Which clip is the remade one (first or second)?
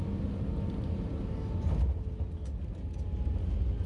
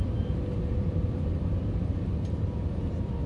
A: second